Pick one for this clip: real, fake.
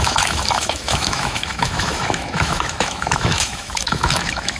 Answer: fake